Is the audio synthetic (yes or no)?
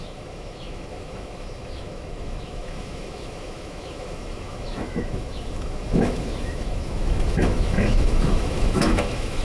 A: yes